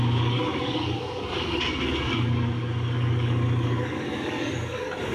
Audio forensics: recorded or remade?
remade